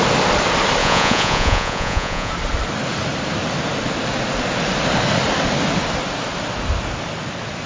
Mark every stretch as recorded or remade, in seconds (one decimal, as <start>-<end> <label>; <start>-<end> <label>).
0.0-0.8 recorded; 0.8-2.3 remade; 2.3-7.7 recorded